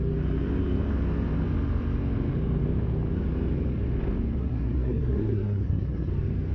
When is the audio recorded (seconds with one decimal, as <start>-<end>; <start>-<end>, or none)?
0.0-4.4; 6.1-6.5